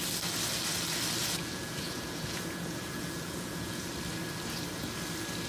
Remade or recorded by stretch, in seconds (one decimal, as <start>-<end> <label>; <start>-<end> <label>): 0.0-1.2 recorded; 1.2-3.9 remade; 3.9-5.5 recorded

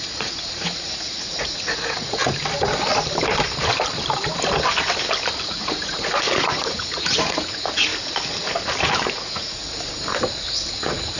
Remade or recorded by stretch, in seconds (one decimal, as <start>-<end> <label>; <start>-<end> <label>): 0.0-2.2 remade; 2.2-5.4 recorded; 5.4-7.9 remade; 7.9-9.1 recorded; 9.1-9.6 remade; 9.6-10.6 recorded; 10.6-11.2 remade